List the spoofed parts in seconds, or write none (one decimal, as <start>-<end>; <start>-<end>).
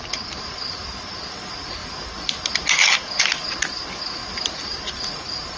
none